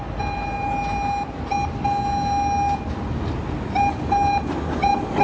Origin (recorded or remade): recorded